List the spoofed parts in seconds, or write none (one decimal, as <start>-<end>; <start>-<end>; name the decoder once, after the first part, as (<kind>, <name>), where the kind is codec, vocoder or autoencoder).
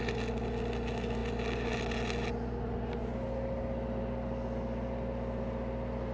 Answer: none